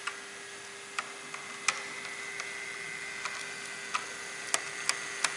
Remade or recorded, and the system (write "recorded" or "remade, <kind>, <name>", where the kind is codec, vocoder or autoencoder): recorded